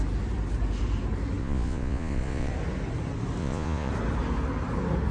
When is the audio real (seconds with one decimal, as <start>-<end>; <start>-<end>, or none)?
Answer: 0.0-1.4; 2.5-3.4; 3.9-5.1